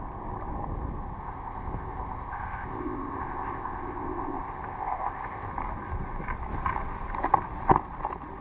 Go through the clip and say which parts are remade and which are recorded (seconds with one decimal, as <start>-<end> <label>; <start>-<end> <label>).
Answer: 0.0-1.2 recorded; 1.2-5.5 remade; 5.5-8.4 recorded